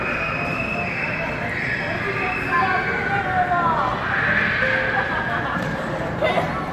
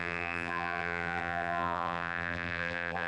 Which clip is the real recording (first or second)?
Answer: first